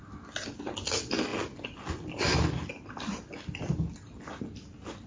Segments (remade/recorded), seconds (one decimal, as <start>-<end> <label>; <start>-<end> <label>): 0.0-5.1 recorded